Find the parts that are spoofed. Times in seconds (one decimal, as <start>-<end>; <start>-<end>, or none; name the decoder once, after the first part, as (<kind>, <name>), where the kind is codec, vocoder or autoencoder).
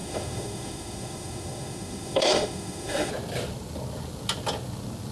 0.0-3.1 (autoencoder, DAC-VAE)